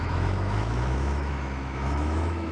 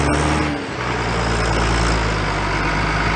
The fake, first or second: first